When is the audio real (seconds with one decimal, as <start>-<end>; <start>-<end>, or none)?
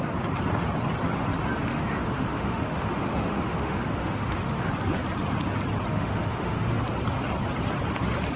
0.0-1.7; 4.7-5.9; 6.8-8.4